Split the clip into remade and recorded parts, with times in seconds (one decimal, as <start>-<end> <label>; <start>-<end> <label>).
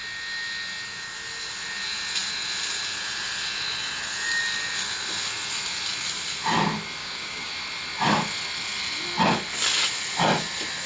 0.0-7.0 recorded; 7.0-7.5 remade; 7.5-10.9 recorded